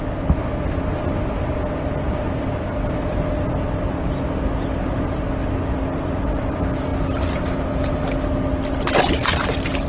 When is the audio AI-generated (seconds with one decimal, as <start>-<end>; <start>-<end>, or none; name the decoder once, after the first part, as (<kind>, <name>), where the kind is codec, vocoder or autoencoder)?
none

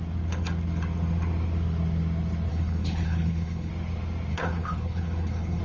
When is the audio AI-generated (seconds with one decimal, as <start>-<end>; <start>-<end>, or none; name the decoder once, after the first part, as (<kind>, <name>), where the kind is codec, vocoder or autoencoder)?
2.5-3.7 (codec, HILCodec); 4.3-5.6

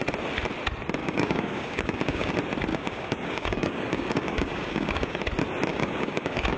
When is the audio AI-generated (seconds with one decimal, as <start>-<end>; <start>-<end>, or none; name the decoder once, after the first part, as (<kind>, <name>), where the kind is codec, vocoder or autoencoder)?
1.0-2.3 (codec, DAC); 2.7-5.2; 5.7-6.6